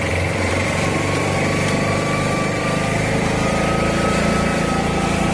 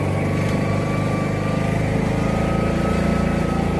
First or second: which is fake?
first